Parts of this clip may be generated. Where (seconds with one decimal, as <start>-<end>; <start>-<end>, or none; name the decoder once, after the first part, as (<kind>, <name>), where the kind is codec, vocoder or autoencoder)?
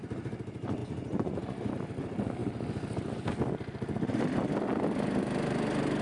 0.8-1.7 (vocoder, Vocos)